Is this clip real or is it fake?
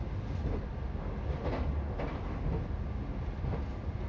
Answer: real